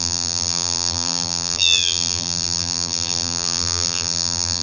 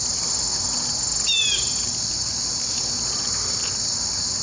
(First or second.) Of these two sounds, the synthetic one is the first